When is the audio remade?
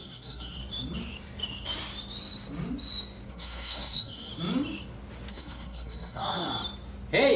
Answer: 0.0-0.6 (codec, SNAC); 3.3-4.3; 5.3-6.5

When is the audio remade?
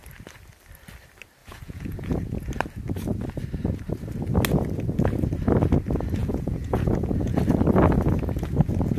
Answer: 1.4-2.5 (vocoder, Vocos); 6.2-7.4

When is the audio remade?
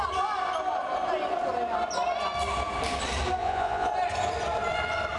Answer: 3.4-3.9 (vocoder, Vocos)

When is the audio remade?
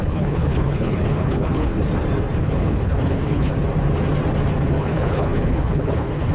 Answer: 0.0-1.7 (codec, HILCodec); 2.4-3.5; 4.7-6.3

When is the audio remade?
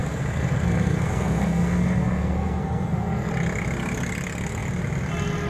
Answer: 0.0-3.3 (codec, SNAC)